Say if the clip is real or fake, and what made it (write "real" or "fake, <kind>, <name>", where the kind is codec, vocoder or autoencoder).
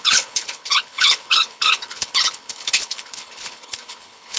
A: fake, codec, HILCodec